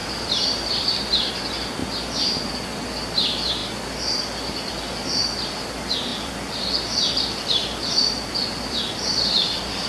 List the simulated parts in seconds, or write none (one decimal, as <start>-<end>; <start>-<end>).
0.0-1.3; 6.1-9.9